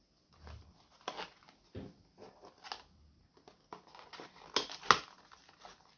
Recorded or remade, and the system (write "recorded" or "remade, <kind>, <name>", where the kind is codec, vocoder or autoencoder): recorded